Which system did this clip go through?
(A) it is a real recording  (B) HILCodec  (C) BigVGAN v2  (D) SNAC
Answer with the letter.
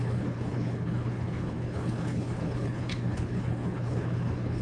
B